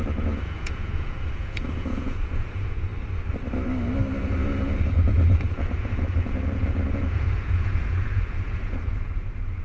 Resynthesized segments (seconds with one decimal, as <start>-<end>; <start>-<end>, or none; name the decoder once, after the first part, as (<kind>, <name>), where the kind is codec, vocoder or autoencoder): 0.0-2.9 (vocoder, Vocos); 4.2-9.6